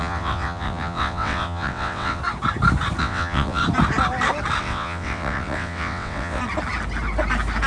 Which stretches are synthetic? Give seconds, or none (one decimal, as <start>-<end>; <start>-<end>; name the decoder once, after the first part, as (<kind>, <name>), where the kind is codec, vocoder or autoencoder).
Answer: 0.0-2.2 (vocoder, WaveNeXt); 3.0-3.6; 4.6-6.4